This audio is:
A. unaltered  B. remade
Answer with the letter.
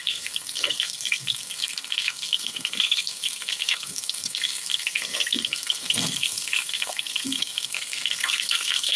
B